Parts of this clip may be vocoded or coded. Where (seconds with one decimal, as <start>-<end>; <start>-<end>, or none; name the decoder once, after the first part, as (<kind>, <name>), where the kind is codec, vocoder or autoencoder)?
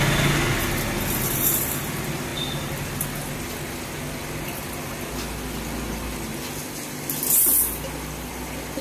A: none